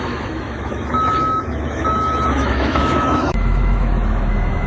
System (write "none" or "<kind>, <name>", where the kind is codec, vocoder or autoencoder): autoencoder, DAC-VAE